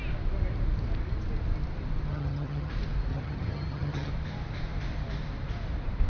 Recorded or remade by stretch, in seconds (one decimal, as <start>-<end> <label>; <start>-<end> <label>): 0.0-2.1 recorded; 2.1-2.7 remade; 2.7-3.1 recorded; 3.1-4.1 remade; 4.1-6.1 recorded